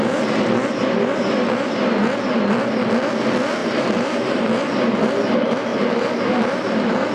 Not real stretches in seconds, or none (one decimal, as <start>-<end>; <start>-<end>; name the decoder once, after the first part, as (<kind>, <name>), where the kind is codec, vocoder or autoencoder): 3.6-4.4 (vocoder, BigVGAN v2); 5.7-7.1